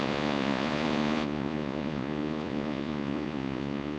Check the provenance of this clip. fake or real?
fake